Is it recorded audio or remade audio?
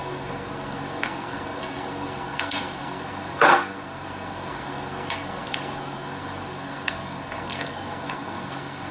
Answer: remade